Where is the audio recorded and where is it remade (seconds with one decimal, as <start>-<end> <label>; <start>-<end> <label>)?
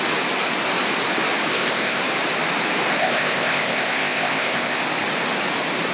0.0-1.5 recorded; 1.5-2.0 remade; 2.0-3.0 recorded; 3.0-4.8 remade; 4.8-5.9 recorded